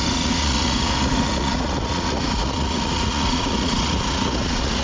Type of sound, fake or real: fake